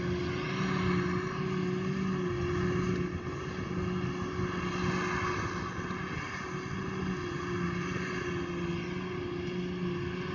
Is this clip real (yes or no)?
yes